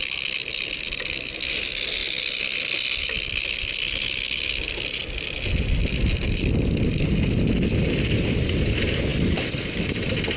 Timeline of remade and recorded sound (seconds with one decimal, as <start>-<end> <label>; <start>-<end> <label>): 0.0-2.0 recorded; 2.0-2.6 remade; 2.6-10.4 recorded